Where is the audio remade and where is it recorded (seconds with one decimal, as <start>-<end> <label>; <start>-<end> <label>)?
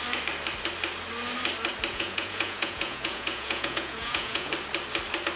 0.0-1.9 recorded; 1.9-4.5 remade; 4.5-5.4 recorded